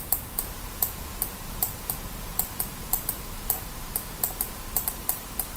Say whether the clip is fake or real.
fake